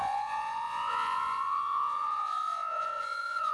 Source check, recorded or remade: remade